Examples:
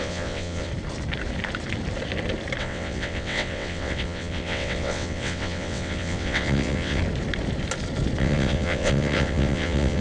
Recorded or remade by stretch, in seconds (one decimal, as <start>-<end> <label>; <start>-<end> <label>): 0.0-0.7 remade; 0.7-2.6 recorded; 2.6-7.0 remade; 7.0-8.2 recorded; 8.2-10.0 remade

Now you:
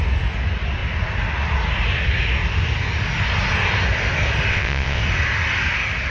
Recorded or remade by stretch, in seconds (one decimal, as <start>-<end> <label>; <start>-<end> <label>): 0.0-4.5 recorded; 4.5-5.0 remade; 5.0-6.1 recorded

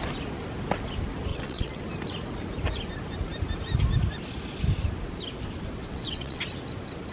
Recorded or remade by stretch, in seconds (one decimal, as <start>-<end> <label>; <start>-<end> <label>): 0.0-1.3 recorded; 1.3-1.8 remade; 1.8-5.8 recorded; 5.8-6.4 remade; 6.4-7.1 recorded

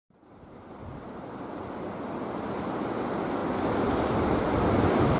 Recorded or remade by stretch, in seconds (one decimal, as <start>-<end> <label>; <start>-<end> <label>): 0.0-5.2 recorded

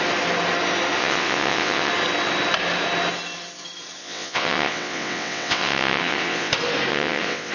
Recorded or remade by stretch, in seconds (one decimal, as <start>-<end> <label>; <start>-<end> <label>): 0.0-1.0 recorded; 1.0-1.9 remade; 1.9-4.0 recorded; 4.0-6.5 remade; 6.5-6.9 recorded; 6.9-7.5 remade

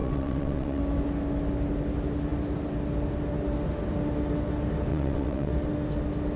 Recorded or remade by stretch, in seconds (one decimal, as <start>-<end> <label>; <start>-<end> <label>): 0.0-0.8 remade; 0.8-4.9 recorded; 4.9-5.5 remade; 5.5-6.4 recorded

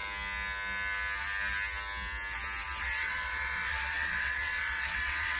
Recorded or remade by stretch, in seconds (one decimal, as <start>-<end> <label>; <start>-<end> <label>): 0.0-2.8 recorded; 2.8-5.4 remade

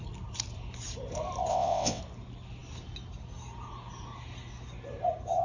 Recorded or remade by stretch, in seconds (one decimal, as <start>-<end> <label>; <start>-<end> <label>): 0.0-1.5 recorded; 1.5-2.0 remade; 2.0-5.4 recorded